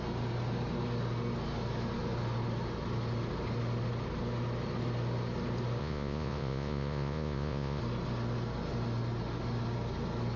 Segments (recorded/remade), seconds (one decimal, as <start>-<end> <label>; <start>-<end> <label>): 0.0-5.8 recorded; 5.8-7.8 remade; 7.8-10.4 recorded